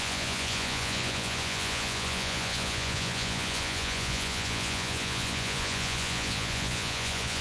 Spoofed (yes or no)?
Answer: yes